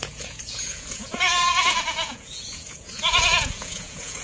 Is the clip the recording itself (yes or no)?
no